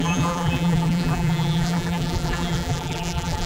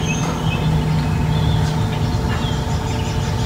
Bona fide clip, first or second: second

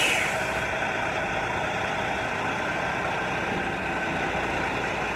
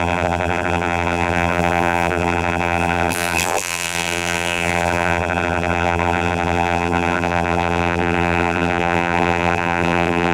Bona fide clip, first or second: first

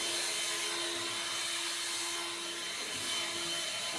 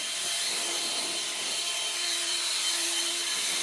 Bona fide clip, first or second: first